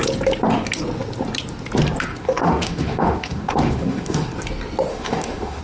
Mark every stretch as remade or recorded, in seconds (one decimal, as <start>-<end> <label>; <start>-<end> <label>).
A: 0.0-2.1 recorded; 2.1-4.3 remade; 4.3-4.9 recorded; 4.9-5.6 remade